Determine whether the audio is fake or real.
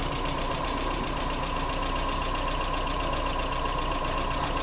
fake